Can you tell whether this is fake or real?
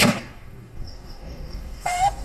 fake